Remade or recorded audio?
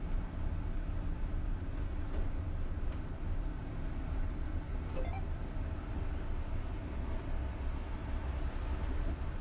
recorded